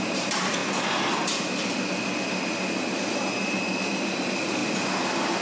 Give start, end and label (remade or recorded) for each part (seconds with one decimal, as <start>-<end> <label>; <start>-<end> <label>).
0.0-0.6 remade; 0.6-3.8 recorded; 3.8-4.6 remade; 4.6-5.4 recorded